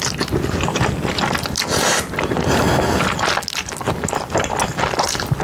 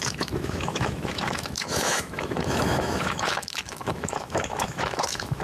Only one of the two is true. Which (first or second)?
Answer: first